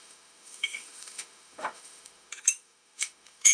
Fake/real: fake